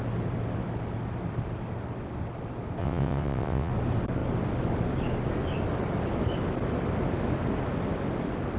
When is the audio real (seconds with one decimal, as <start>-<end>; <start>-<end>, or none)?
0.0-2.8; 3.7-8.6